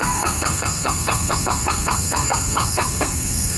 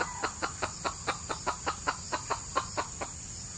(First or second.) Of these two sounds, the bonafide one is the second